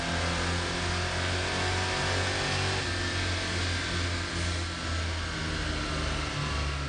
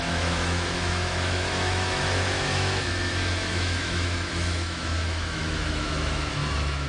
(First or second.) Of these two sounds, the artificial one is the second